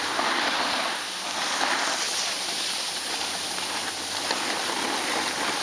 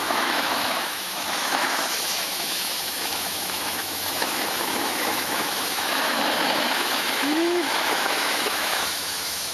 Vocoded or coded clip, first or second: second